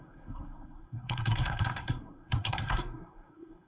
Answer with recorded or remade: remade